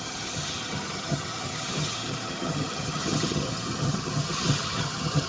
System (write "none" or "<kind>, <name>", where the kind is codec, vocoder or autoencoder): vocoder, HiFi-GAN